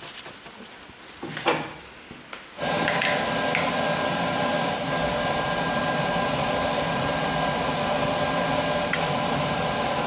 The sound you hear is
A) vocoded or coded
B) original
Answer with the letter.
B